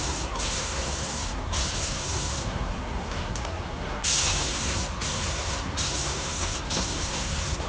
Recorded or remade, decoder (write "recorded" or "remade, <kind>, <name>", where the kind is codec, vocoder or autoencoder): remade, codec, SNAC